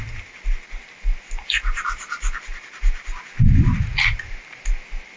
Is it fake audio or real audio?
real